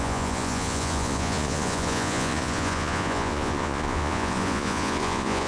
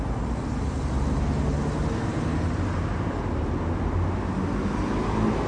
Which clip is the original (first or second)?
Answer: second